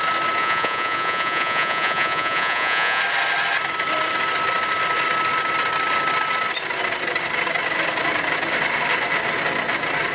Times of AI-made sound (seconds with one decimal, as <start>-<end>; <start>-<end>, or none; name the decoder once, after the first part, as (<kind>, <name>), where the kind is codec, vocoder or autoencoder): 0.4-3.0 (vocoder, Vocos)